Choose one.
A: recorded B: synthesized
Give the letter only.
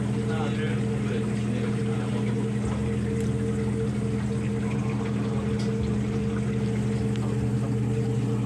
A